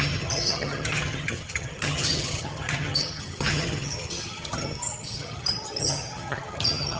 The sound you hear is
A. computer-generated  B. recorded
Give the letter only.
A